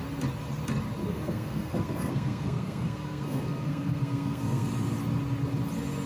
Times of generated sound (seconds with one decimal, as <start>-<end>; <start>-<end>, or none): 1.0-4.7